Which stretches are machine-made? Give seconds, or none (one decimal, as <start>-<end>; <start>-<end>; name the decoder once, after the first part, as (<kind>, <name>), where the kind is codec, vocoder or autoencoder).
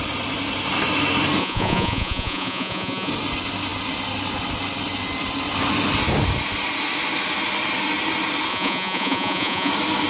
1.4-3.1 (vocoder, Vocos); 8.5-9.7